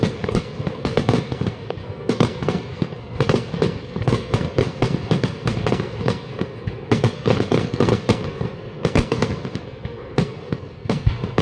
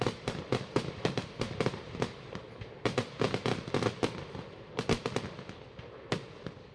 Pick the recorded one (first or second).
second